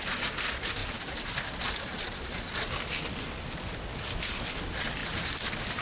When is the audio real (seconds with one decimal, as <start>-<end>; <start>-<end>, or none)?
0.0-5.0